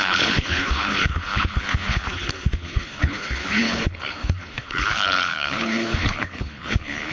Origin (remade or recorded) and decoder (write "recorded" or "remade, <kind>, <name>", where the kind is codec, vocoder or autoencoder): remade, codec, HILCodec